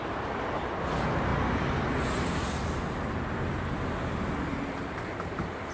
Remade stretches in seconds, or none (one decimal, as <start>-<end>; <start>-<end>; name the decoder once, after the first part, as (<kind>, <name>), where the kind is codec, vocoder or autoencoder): 0.0-1.3 (vocoder, BigVGAN v2); 4.7-5.7